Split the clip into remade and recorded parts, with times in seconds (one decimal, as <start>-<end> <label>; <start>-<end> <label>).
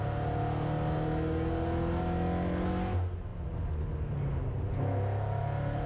0.0-5.9 recorded